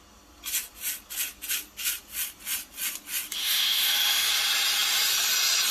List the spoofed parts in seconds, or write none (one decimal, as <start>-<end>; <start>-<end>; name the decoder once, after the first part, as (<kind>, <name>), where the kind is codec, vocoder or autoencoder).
3.4-4.3 (autoencoder, DAC-VAE)